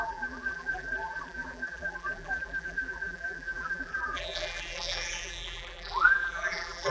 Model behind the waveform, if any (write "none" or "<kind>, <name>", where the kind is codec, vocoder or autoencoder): vocoder, BigVGAN v2